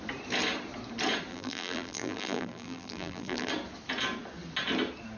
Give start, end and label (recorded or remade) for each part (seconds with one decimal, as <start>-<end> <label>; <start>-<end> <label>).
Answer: 0.0-1.3 recorded; 1.3-3.5 remade; 3.5-5.2 recorded

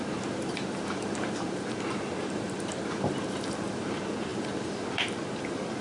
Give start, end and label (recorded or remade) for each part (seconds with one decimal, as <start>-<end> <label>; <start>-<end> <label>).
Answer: 0.0-5.8 remade

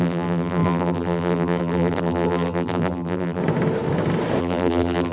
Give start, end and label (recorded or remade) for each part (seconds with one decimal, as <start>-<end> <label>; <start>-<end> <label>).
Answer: 0.0-3.4 remade; 3.4-4.4 recorded; 4.4-5.1 remade